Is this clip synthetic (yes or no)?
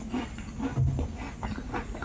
no